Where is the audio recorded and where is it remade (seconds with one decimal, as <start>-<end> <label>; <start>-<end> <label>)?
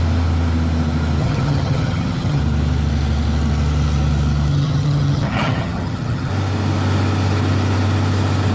0.0-1.2 recorded; 1.2-2.4 remade; 2.4-4.5 recorded; 4.5-6.3 remade; 6.3-8.5 recorded